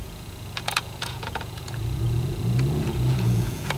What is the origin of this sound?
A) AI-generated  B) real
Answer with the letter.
A